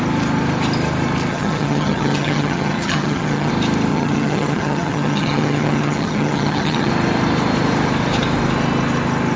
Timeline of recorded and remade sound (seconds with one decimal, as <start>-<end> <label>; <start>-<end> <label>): 0.0-1.3 recorded; 1.3-3.5 remade; 3.5-3.9 recorded; 3.9-6.9 remade; 6.9-9.4 recorded